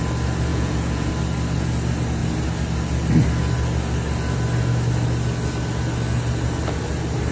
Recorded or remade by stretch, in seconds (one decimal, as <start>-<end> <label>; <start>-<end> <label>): 0.0-0.5 recorded; 0.5-1.1 remade; 1.1-7.3 recorded